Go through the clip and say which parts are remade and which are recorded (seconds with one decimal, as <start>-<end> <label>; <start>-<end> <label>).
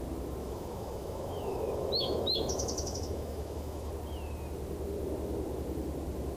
0.0-0.4 recorded; 0.4-3.9 remade; 3.9-6.4 recorded